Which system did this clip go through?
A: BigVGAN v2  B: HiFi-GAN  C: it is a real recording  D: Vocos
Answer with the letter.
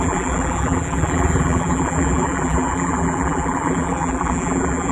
A